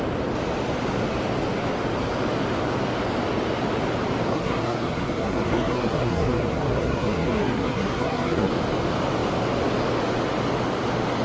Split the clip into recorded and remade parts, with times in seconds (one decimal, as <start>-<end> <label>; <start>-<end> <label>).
0.0-4.3 recorded; 4.3-8.5 remade; 8.5-11.2 recorded